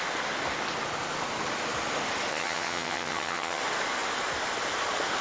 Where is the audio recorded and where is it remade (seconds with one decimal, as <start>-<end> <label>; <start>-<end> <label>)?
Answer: 0.0-2.3 recorded; 2.3-3.6 remade; 3.6-5.2 recorded